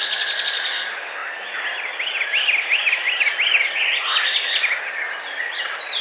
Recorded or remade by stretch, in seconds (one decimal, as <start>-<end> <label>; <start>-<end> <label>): 0.0-6.0 recorded